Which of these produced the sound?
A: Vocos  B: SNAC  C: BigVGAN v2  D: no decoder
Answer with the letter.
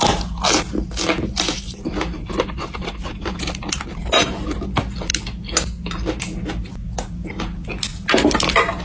D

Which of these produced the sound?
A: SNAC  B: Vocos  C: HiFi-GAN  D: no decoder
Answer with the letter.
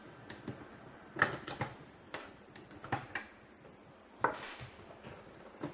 D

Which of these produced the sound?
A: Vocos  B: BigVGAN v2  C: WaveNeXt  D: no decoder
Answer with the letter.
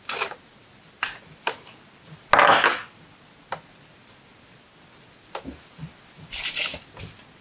D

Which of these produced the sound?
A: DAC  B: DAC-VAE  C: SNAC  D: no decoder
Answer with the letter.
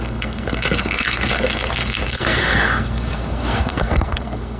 C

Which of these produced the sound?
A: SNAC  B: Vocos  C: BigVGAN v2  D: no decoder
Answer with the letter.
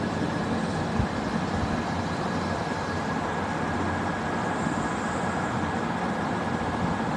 C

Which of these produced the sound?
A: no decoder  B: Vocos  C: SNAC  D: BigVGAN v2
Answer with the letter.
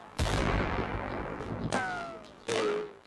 D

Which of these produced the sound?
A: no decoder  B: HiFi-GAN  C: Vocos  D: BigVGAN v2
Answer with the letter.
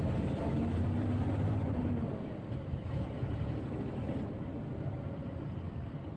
D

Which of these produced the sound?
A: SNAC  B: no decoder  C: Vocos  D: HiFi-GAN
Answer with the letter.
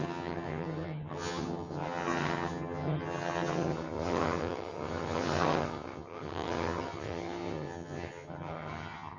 D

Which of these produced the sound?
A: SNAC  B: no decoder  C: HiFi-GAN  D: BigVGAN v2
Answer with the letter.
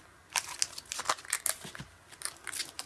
B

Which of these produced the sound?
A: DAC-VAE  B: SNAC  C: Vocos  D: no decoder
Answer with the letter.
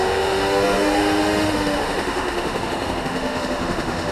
A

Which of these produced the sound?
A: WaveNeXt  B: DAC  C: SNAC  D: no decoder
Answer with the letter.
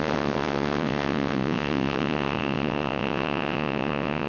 A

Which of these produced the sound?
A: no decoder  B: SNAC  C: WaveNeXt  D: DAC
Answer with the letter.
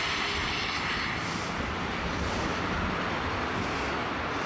A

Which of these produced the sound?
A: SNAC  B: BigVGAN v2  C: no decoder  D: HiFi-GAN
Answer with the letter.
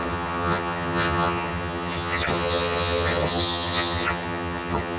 D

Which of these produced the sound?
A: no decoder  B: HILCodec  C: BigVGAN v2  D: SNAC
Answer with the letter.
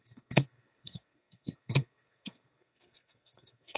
D